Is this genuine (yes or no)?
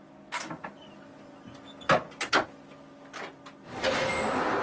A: yes